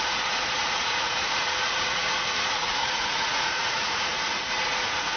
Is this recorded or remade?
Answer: remade